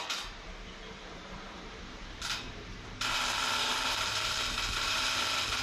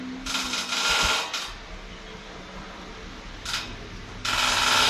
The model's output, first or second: first